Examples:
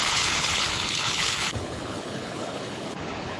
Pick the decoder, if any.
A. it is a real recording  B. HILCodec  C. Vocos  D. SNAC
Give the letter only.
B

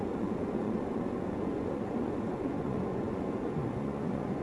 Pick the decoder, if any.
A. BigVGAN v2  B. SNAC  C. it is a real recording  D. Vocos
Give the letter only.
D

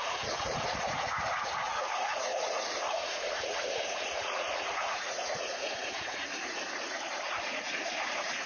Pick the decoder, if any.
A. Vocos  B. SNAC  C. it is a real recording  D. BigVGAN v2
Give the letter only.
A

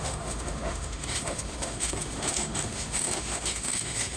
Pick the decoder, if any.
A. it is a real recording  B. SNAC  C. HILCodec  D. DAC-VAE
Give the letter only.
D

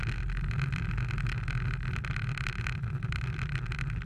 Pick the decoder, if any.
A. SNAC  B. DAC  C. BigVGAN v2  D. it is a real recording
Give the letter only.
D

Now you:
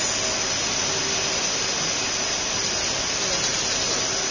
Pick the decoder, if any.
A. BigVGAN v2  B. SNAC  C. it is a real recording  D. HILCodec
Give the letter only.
C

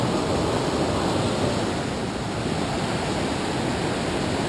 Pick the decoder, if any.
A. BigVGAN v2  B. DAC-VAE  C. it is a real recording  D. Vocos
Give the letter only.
C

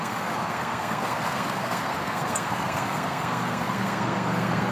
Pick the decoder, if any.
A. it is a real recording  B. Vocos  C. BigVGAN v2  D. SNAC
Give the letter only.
D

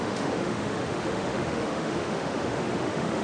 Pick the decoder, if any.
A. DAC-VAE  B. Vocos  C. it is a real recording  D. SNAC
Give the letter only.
A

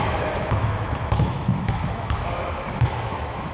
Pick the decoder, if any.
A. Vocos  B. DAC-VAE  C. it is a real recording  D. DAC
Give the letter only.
B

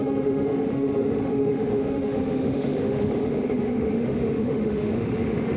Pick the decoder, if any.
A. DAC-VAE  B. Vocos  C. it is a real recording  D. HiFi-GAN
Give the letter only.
A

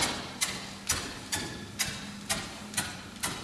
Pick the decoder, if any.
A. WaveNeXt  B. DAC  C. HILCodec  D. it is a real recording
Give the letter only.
D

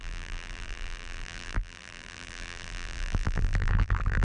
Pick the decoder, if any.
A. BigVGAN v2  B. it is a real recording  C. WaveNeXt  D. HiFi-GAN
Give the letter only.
A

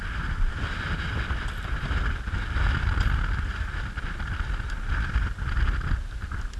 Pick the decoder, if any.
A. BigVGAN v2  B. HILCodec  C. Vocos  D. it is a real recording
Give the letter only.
D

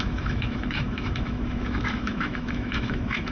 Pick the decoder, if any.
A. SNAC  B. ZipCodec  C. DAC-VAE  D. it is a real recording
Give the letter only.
C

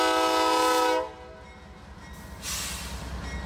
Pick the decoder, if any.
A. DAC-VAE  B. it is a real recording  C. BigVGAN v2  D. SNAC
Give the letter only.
B